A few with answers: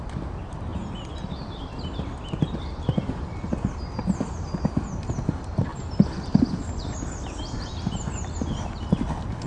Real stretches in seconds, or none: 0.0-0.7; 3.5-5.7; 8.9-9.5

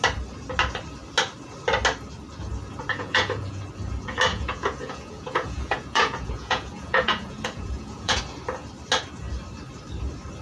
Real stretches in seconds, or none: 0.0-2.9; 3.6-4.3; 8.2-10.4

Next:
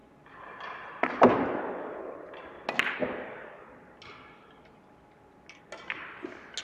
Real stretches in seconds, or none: 0.0-6.6

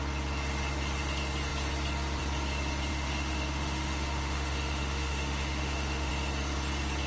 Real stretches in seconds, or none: 0.0-2.9; 6.1-7.1